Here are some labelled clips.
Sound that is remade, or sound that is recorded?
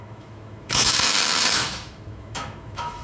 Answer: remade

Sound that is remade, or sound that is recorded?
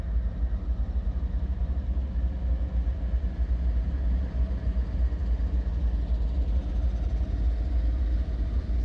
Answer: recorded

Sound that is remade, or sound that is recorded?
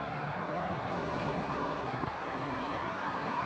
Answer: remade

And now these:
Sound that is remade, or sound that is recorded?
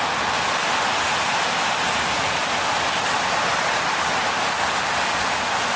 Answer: recorded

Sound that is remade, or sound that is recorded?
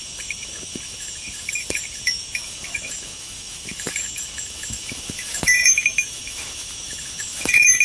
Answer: remade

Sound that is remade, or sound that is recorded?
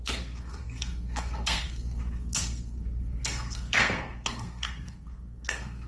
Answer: remade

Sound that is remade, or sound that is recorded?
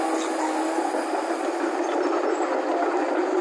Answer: recorded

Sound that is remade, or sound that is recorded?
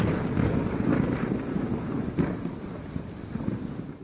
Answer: recorded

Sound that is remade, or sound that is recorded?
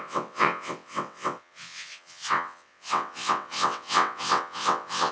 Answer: remade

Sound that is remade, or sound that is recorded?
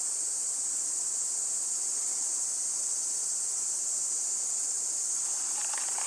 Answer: recorded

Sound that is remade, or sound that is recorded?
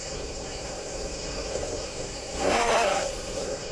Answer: remade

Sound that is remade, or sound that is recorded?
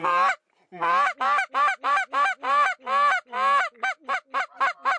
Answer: recorded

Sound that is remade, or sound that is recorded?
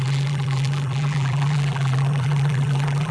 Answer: remade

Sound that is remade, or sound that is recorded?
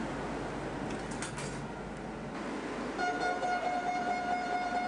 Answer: recorded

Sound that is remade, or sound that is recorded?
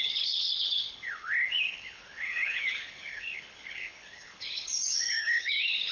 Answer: remade